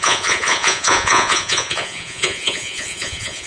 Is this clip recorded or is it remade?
remade